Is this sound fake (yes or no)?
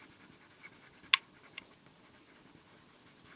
no